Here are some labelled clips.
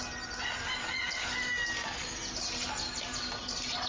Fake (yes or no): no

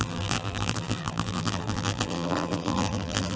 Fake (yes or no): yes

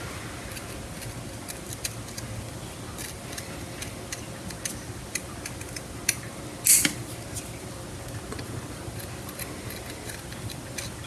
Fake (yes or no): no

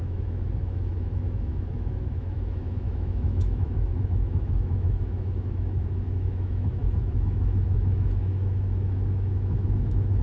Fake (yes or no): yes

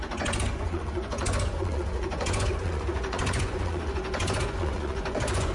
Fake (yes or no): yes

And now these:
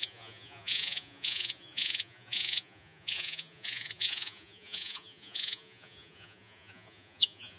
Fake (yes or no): yes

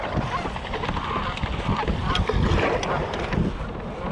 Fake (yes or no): no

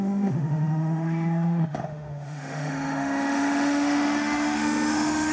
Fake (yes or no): yes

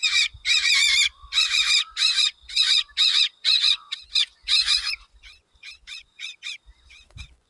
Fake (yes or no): yes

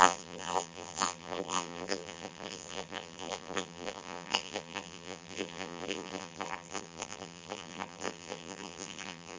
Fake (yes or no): yes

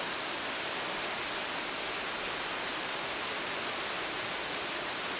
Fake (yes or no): no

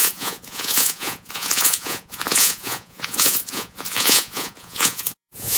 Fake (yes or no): yes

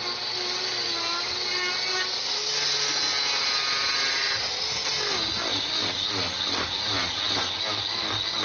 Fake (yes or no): no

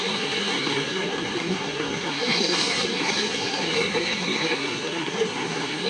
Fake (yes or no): yes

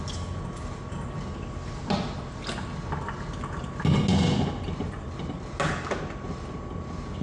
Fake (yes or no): no